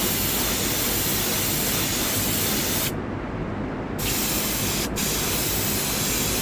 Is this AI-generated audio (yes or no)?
no